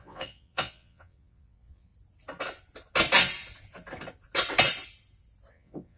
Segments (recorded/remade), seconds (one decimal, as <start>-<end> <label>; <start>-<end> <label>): 0.0-1.9 remade; 1.9-5.5 recorded; 5.5-6.0 remade